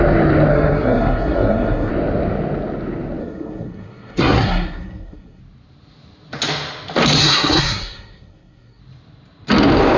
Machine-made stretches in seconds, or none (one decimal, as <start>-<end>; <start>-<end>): 0.5-1.9; 3.2-5.4; 7.2-8.8